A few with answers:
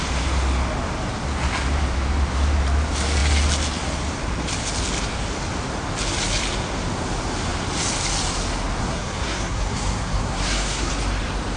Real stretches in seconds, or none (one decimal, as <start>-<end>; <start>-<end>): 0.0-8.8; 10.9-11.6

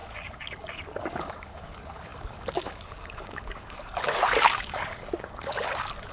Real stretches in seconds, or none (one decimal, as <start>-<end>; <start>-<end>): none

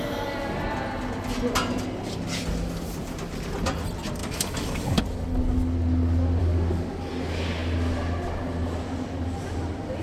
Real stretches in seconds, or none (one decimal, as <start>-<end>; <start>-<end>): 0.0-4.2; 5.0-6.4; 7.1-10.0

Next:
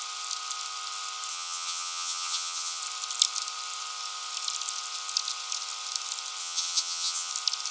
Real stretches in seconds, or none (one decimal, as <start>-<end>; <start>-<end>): 0.0-1.3; 2.8-6.4; 7.3-7.7